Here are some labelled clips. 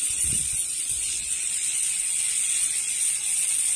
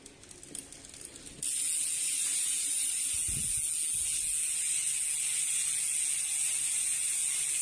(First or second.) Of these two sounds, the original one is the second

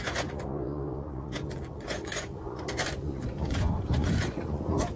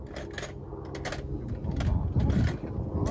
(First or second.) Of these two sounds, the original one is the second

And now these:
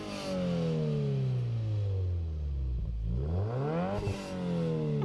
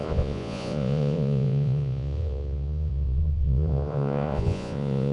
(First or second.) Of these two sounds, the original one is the first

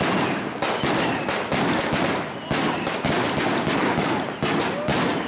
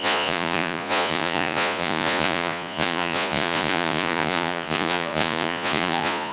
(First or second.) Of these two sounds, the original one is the first